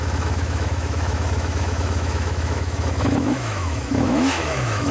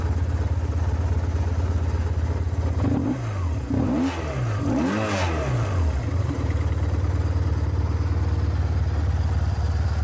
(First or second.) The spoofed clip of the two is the first